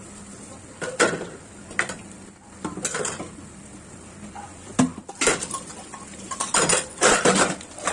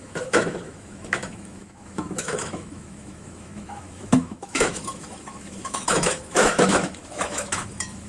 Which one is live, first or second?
first